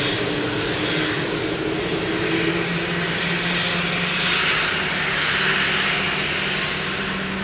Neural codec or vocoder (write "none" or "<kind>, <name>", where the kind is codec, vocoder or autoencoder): none